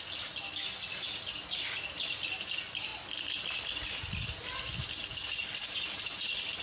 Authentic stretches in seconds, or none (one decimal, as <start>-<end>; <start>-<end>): 0.0-6.6